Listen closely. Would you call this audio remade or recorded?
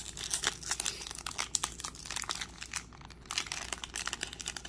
recorded